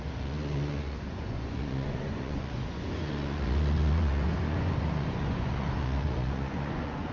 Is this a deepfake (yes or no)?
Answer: yes